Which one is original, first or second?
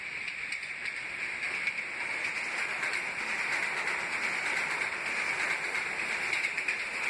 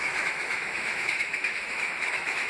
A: first